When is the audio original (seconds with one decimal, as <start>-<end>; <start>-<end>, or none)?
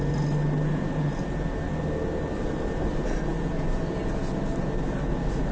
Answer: 0.0-5.5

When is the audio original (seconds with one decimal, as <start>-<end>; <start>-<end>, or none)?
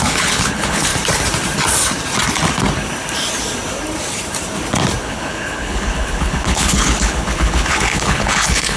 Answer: 0.9-5.0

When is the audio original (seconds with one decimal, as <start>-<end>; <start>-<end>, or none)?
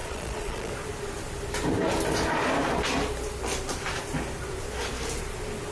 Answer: 0.7-5.7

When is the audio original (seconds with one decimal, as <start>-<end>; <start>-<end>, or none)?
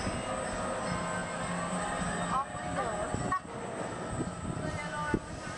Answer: 0.0-5.6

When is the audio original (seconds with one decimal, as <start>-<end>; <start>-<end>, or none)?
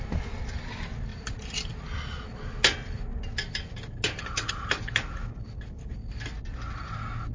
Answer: 0.0-7.3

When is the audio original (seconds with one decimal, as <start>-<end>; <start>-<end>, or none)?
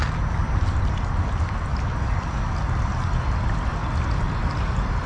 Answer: 0.0-5.1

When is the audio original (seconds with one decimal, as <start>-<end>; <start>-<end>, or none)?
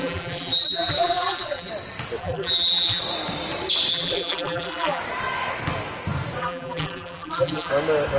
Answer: 1.7-2.2; 3.0-3.9; 5.0-6.4; 7.7-8.2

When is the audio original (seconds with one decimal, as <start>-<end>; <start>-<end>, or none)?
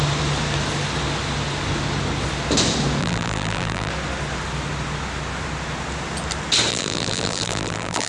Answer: 0.0-3.0; 3.9-6.7